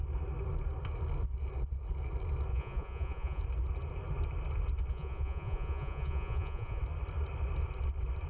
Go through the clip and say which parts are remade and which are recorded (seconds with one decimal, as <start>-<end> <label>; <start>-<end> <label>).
0.0-2.5 recorded; 2.5-3.4 remade; 3.4-4.9 recorded; 4.9-6.8 remade; 6.8-8.3 recorded